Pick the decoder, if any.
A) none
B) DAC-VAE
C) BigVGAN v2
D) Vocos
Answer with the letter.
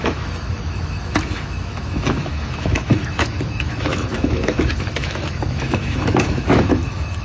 B